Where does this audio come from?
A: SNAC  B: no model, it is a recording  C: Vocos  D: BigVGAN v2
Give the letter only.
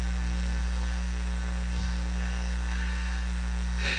A